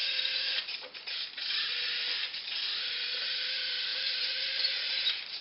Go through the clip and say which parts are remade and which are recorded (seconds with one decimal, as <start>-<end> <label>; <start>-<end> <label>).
0.0-5.4 recorded